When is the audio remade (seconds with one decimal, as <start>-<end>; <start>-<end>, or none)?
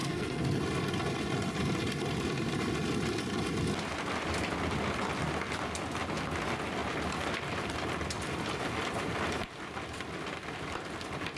0.0-0.6